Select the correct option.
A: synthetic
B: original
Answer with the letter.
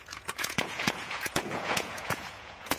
A